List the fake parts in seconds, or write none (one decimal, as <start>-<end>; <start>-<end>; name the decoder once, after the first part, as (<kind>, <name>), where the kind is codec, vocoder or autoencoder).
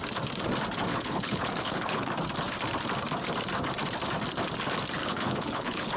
0.9-2.1 (codec, HILCodec); 5.0-6.0